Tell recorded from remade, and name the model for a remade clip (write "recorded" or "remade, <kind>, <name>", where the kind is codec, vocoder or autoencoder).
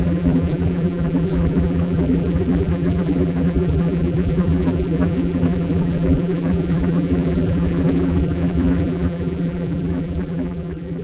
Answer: remade, vocoder, BigVGAN v2